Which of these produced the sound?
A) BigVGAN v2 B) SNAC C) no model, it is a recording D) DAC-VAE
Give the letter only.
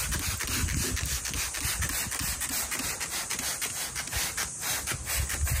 C